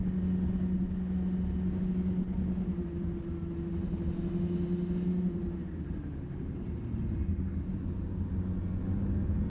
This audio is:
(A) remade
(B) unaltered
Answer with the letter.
B